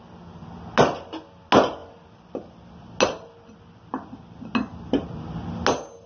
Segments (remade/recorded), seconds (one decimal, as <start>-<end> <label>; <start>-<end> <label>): 0.0-6.1 recorded